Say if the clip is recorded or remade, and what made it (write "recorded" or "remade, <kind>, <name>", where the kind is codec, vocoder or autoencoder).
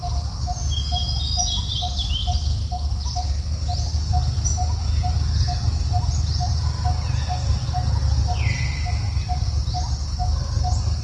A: recorded